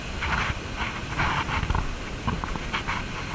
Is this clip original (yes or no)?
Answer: yes